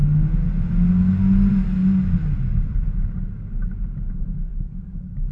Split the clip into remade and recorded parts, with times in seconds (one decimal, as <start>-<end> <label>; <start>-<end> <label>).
0.0-5.3 recorded